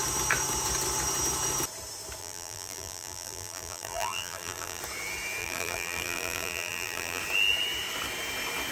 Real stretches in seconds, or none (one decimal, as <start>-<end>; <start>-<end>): 0.0-2.2; 4.8-5.4; 7.2-8.7